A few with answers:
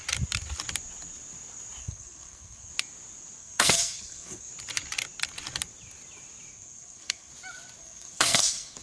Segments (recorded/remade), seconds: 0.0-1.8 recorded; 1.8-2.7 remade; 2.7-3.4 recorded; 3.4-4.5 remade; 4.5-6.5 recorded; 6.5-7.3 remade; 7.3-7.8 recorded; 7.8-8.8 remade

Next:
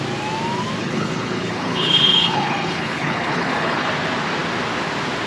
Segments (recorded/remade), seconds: 0.0-0.8 recorded; 0.8-3.9 remade; 3.9-5.3 recorded

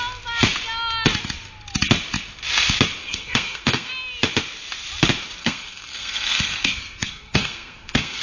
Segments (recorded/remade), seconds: 0.0-3.0 recorded; 3.0-3.9 remade; 3.9-5.4 recorded; 5.4-8.2 remade

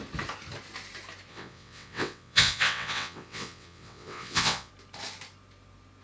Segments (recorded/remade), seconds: 0.0-1.3 recorded; 1.3-4.7 remade; 4.7-6.0 recorded

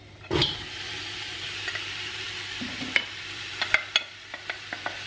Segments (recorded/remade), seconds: 0.0-3.5 remade; 3.5-5.1 recorded

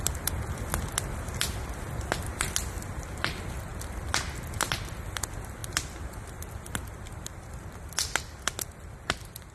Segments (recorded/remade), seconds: 0.0-9.5 recorded